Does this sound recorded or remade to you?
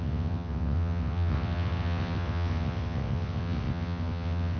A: remade